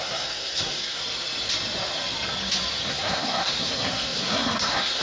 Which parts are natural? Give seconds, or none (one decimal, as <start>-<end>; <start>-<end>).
1.0-2.9